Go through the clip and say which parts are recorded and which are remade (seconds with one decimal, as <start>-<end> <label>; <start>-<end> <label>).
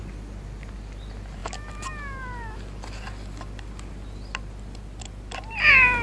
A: 0.0-6.0 recorded